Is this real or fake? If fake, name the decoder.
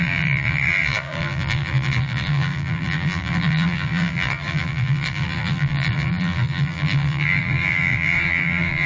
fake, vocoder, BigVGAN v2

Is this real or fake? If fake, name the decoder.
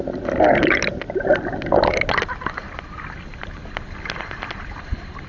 real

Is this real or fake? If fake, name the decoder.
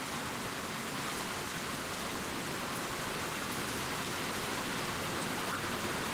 real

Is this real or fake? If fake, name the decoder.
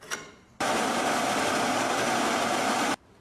fake, vocoder, BigVGAN v2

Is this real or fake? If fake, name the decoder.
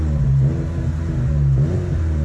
real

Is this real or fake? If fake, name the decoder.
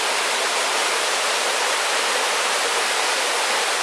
fake, vocoder, BigVGAN v2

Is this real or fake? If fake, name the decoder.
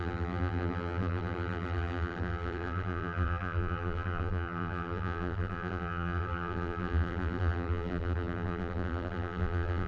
fake, vocoder, BigVGAN v2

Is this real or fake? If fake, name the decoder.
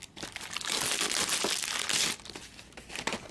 real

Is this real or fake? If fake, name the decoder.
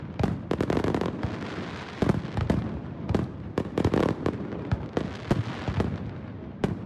real